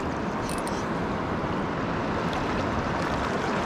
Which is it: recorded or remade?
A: recorded